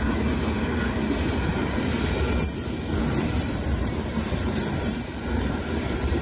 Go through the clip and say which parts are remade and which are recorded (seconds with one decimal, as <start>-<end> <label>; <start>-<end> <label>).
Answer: 0.0-1.6 recorded; 1.6-2.3 remade; 2.3-3.0 recorded; 3.0-6.2 remade